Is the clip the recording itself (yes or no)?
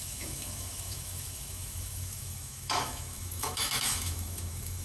no